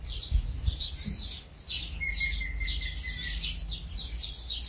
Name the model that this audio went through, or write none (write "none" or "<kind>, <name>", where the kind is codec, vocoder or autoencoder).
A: none